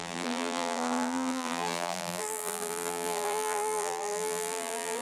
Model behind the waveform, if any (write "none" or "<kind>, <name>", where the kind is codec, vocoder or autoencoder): vocoder, BigVGAN v2